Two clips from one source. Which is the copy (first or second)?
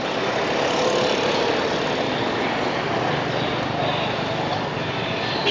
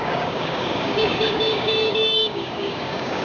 second